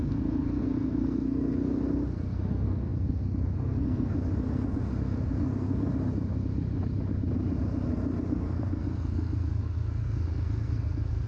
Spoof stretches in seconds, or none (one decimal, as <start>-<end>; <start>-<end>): 0.0-5.9; 8.2-11.3